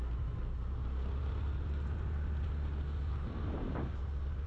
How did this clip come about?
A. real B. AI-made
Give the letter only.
A